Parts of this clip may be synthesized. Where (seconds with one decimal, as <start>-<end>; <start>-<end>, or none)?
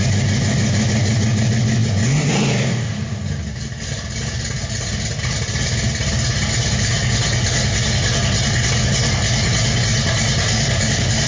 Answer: none